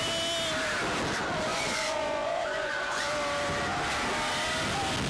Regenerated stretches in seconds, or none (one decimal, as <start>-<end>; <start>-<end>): 1.5-3.1